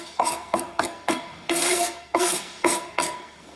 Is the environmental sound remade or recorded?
remade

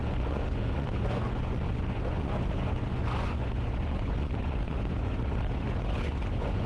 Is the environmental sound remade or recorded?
remade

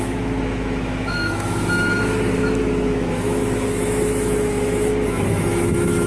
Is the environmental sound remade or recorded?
remade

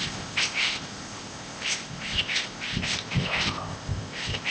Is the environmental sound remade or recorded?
remade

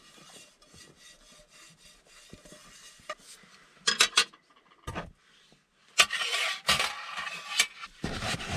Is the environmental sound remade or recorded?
recorded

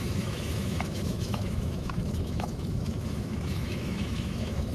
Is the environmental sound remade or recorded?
remade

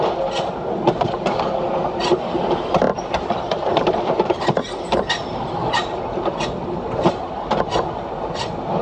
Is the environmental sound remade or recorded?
remade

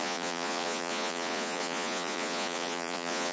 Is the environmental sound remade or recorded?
remade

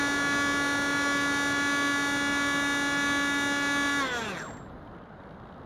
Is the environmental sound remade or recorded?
recorded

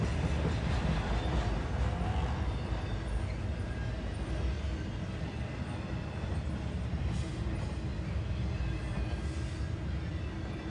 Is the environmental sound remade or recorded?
recorded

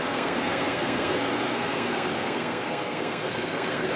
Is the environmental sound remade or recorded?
remade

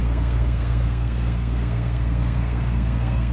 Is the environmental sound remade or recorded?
remade